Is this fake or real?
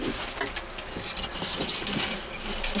real